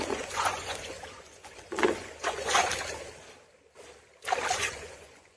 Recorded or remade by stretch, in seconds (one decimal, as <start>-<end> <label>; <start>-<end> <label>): 0.0-2.7 remade; 2.7-4.6 recorded; 4.6-5.4 remade